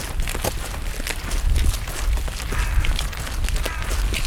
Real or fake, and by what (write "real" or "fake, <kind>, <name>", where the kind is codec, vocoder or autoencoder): real